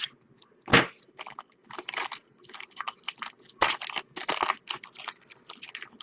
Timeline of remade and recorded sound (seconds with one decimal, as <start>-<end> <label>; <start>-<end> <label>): 0.0-6.0 recorded